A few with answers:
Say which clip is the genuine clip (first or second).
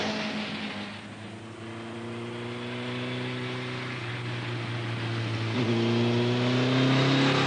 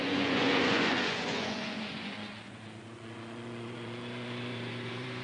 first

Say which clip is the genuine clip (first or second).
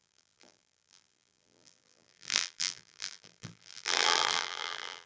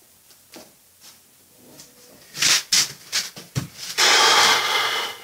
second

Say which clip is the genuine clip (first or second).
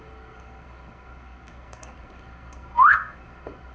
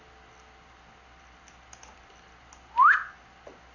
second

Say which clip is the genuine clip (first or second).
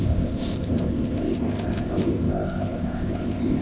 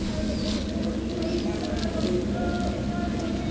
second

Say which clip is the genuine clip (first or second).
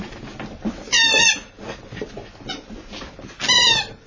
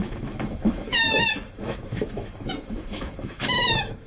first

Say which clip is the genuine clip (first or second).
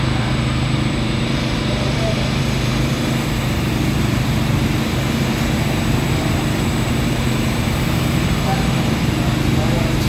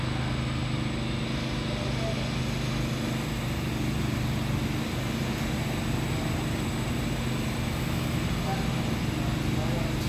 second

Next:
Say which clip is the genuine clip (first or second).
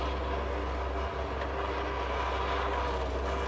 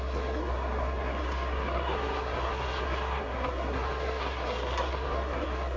first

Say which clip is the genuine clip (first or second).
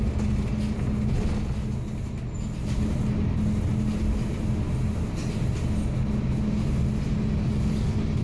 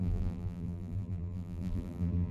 first